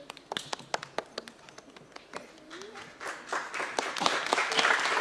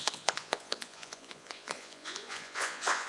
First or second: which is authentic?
first